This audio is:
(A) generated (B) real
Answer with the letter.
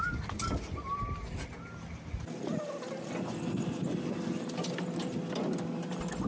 B